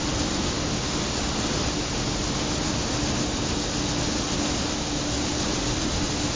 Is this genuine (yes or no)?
yes